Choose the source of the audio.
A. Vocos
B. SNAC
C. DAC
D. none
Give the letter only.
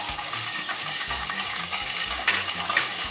C